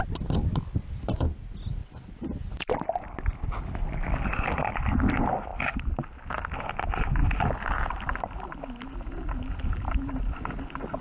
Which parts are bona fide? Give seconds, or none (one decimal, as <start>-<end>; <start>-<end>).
0.0-1.8; 2.4-7.2; 7.7-11.0